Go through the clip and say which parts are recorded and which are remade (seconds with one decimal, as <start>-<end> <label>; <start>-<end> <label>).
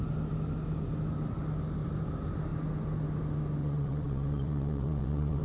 0.0-3.6 recorded; 3.6-5.4 remade